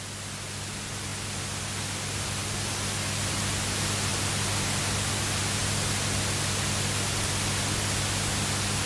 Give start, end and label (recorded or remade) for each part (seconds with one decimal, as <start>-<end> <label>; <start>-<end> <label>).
0.0-2.4 recorded; 2.4-3.4 remade; 3.4-4.1 recorded; 4.1-4.8 remade; 4.8-5.6 recorded; 5.6-7.4 remade; 7.4-8.9 recorded